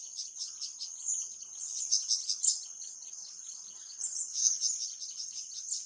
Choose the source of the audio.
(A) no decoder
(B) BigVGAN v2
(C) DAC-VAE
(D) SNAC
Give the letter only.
A